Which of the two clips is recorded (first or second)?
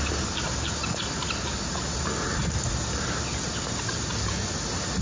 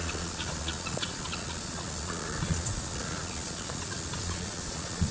first